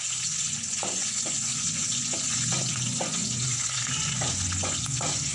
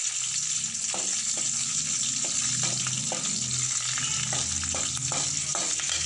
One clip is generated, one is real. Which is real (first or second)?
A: second